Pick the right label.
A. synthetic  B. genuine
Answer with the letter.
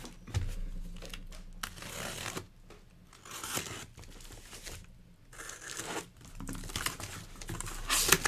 B